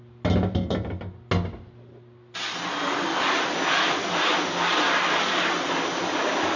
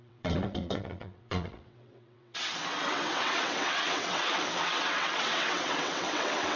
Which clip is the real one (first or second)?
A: first